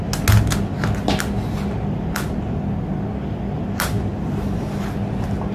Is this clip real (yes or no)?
yes